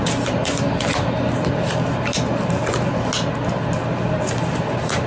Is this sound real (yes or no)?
yes